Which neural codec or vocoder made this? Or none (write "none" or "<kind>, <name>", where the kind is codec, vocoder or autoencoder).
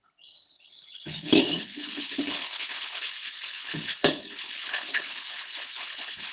codec, HILCodec